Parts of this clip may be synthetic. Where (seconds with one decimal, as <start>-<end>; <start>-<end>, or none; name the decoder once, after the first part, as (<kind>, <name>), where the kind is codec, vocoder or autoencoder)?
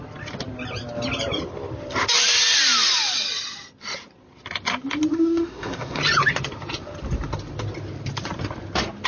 5.1-6.0 (codec, SNAC)